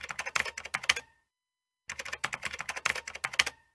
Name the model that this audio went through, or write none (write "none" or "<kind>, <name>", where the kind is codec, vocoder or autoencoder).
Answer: none